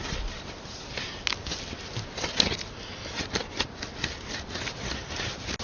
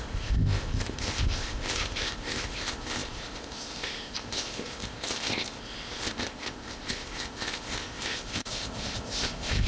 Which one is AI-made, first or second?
second